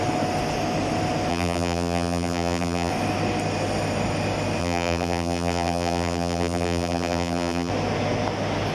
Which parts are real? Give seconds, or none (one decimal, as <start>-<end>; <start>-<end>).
0.0-1.3; 2.9-4.6; 7.7-8.7